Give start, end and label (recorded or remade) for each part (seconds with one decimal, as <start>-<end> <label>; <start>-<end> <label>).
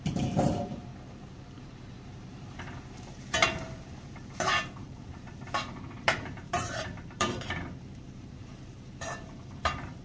0.0-0.9 remade; 0.9-1.6 recorded; 1.6-10.0 remade